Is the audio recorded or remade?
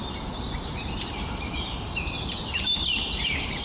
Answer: remade